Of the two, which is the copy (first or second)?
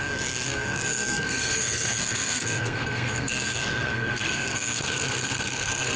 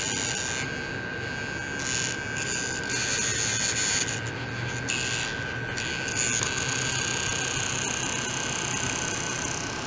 first